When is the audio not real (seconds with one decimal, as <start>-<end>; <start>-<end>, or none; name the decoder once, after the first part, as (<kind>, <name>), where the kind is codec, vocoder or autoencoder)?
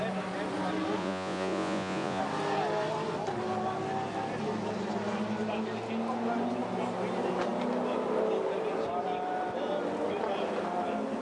1.0-2.2 (vocoder, Vocos)